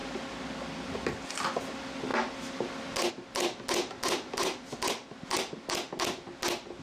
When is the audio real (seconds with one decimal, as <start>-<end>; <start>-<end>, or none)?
0.0-6.8